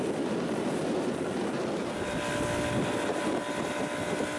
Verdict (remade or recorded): recorded